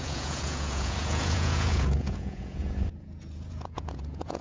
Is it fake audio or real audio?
fake